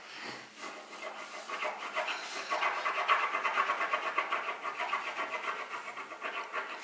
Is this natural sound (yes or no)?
yes